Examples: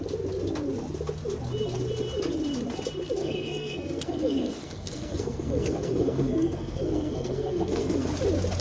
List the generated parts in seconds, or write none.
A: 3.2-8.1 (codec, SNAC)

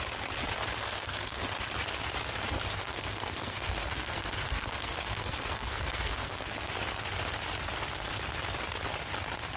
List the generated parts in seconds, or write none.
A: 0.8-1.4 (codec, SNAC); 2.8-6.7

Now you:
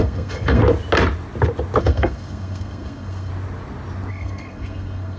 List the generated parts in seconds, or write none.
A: 0.0-0.6 (codec, SNAC); 1.8-3.3; 4.1-5.2

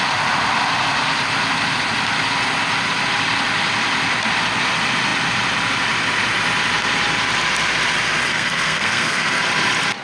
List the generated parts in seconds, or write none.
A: 8.3-9.4 (codec, SNAC)